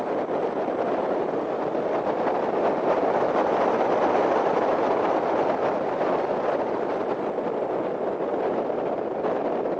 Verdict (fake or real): real